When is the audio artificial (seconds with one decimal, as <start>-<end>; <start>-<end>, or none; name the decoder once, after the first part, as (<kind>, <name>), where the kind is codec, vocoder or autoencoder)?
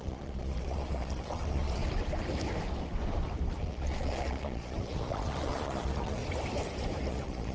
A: 0.0-1.8 (vocoder, Vocos); 3.6-6.2; 7.1-7.5